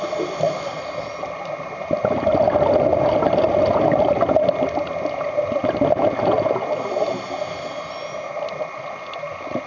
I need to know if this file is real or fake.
real